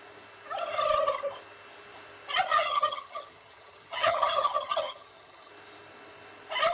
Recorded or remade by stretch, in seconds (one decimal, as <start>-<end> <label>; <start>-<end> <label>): 0.0-2.5 recorded; 2.5-5.5 remade; 5.5-6.7 recorded